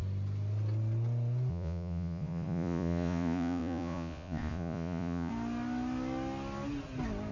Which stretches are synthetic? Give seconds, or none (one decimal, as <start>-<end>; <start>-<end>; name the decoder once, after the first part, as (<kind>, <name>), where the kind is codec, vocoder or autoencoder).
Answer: 1.5-5.3 (vocoder, Vocos)